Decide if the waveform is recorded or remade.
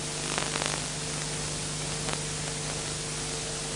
recorded